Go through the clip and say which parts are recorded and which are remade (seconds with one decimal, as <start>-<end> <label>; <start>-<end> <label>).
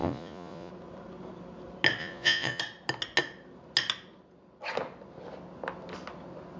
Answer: 0.0-0.7 remade; 0.7-2.0 recorded; 2.0-2.6 remade; 2.6-6.6 recorded